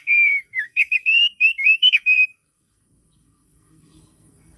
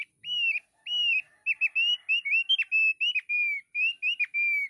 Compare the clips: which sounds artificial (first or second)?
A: first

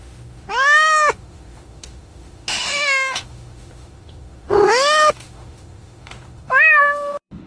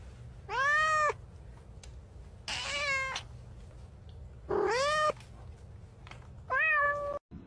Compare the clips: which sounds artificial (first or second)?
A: first